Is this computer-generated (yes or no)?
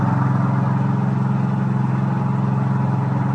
no